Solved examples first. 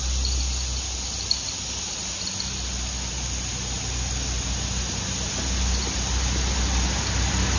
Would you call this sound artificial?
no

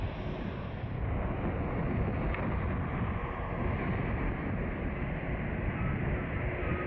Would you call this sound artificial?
no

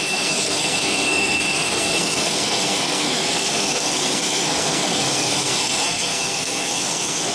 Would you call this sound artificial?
yes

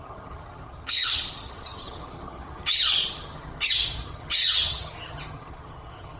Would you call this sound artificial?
yes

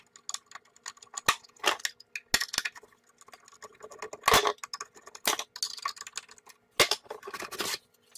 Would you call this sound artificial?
no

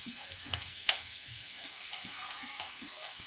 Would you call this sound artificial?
yes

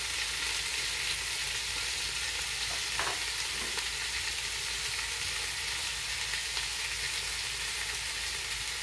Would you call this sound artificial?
no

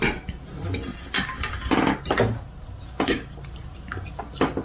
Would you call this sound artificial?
no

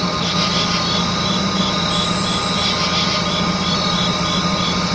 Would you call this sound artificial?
no